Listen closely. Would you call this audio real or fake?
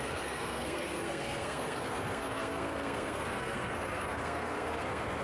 fake